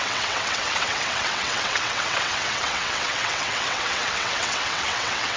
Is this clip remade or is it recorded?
remade